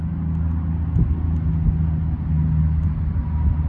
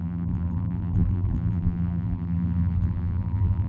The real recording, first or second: first